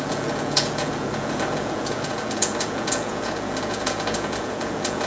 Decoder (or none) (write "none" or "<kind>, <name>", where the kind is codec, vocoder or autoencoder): vocoder, Vocos